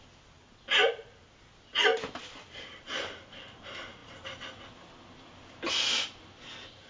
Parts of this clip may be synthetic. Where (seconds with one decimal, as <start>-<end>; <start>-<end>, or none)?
none